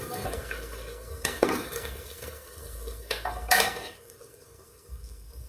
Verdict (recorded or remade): remade